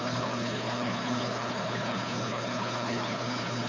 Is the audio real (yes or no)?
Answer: no